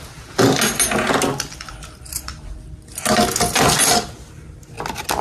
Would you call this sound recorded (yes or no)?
yes